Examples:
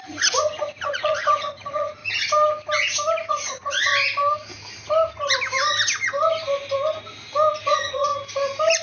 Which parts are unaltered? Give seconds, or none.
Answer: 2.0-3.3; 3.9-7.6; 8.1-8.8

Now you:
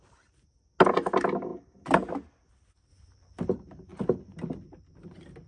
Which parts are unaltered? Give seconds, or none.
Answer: 0.0-2.9; 3.5-5.5

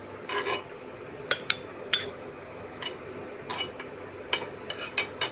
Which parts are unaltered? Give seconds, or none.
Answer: 0.0-1.7; 2.9-5.3

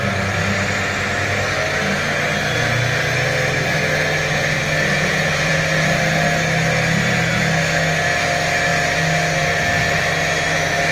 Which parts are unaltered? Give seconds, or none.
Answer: 0.0-4.9; 5.6-10.9